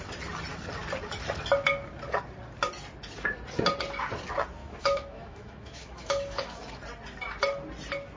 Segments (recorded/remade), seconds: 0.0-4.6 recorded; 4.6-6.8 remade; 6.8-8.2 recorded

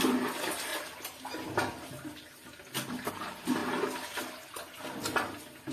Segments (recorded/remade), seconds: 0.0-5.7 recorded

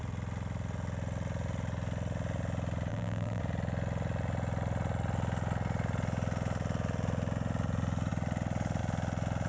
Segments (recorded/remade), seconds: 0.0-2.9 recorded; 2.9-3.4 remade; 3.4-9.5 recorded

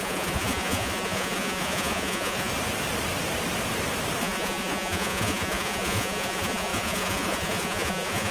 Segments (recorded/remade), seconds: 0.0-2.5 remade; 2.5-4.2 recorded; 4.2-8.3 remade